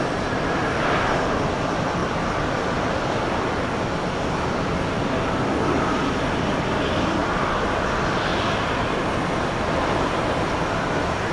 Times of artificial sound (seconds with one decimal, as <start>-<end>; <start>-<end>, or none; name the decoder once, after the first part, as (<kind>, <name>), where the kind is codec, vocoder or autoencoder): 7.2-7.8 (vocoder, BigVGAN v2); 8.3-9.1